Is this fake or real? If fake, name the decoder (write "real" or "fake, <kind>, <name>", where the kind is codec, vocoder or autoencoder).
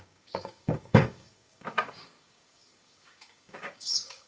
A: fake, codec, DAC